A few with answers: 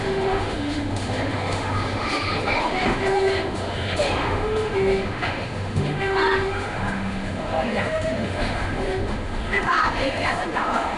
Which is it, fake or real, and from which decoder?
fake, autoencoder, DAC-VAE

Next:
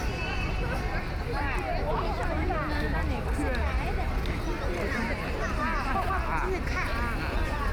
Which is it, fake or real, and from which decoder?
real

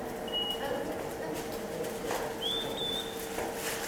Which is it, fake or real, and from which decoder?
real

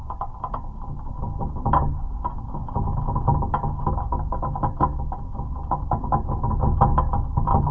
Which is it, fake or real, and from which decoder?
real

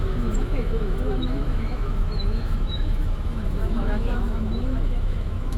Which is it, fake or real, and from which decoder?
fake, autoencoder, DAC-VAE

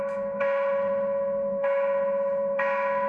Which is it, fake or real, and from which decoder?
fake, autoencoder, DAC-VAE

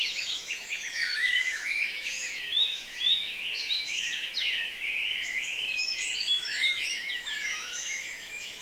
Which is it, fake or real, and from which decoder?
fake, autoencoder, DAC-VAE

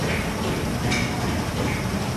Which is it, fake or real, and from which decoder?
real